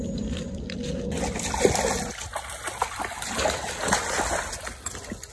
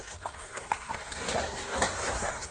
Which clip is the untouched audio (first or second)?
first